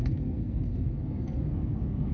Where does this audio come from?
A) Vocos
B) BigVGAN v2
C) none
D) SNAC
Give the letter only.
D